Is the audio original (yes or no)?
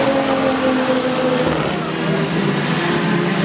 yes